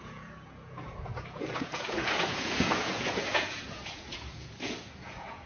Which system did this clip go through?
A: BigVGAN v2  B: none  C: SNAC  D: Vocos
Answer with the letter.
D